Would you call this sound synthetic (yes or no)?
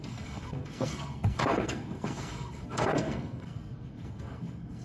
yes